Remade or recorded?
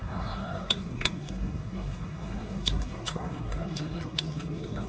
remade